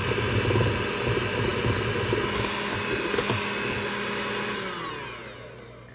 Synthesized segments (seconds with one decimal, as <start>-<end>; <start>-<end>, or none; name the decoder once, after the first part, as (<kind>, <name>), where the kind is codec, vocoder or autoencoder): none